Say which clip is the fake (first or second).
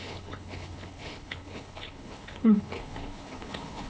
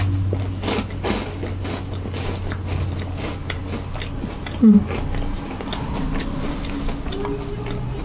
first